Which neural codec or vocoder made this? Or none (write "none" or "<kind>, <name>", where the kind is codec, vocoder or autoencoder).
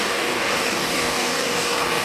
codec, DAC